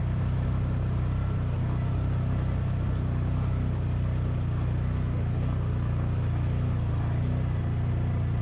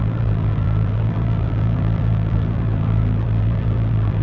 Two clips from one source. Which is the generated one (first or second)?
second